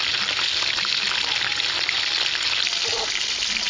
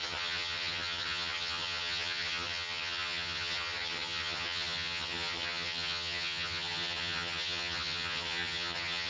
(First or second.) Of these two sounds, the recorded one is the first